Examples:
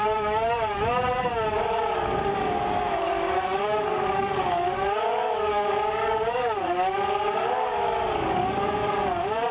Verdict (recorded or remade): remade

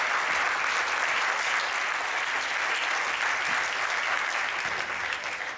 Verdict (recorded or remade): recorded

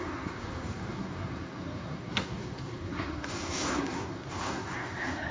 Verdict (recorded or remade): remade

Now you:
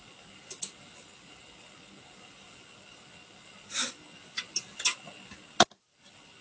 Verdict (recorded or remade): recorded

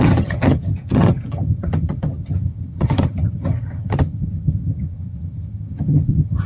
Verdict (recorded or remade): remade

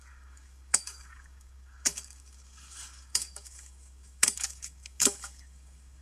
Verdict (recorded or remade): remade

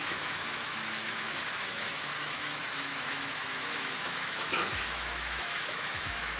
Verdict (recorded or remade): remade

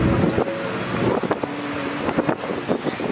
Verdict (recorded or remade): recorded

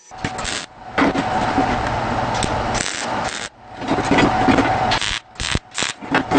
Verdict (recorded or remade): recorded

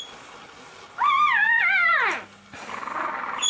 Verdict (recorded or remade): recorded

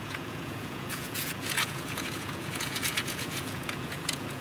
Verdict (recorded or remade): remade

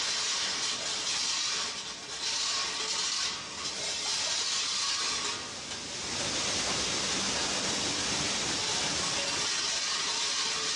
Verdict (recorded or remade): recorded